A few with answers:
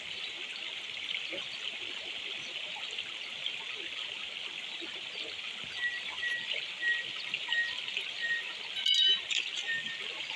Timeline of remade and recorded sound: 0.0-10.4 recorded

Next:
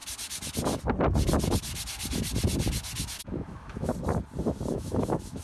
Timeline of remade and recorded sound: 0.0-3.2 recorded; 3.2-3.9 remade; 3.9-4.7 recorded; 4.7-5.4 remade

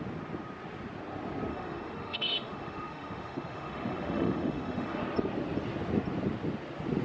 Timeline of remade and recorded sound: 0.0-1.5 recorded; 1.5-5.0 remade; 5.0-7.0 recorded

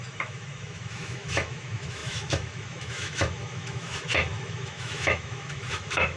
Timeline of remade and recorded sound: 0.0-6.2 remade

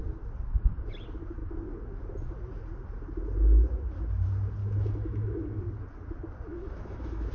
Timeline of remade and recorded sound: 0.0-4.6 recorded; 4.6-5.6 remade; 5.6-6.5 recorded; 6.5-7.3 remade

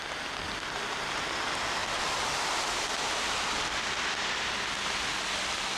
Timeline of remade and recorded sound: 0.0-5.8 recorded

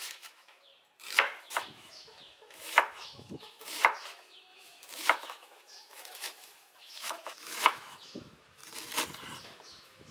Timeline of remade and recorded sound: 0.0-0.7 remade; 0.7-1.4 recorded; 1.4-8.6 remade; 8.6-9.4 recorded; 9.4-10.1 remade